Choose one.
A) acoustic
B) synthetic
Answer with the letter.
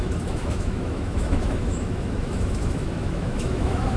B